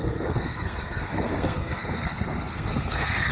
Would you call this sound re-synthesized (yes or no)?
yes